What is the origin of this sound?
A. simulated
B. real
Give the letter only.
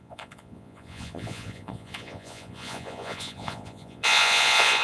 A